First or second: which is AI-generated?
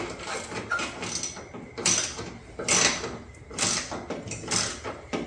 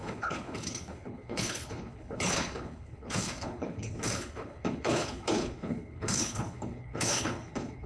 second